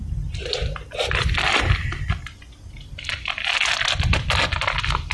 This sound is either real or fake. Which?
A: real